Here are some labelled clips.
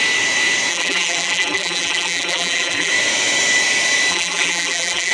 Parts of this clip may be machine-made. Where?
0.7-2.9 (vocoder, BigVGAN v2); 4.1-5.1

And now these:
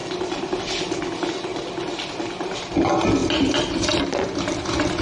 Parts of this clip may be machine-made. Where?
0.0-0.6 (vocoder, BigVGAN v2); 3.2-4.4